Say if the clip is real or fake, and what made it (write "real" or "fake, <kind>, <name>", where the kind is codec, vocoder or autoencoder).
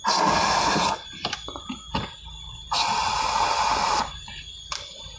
real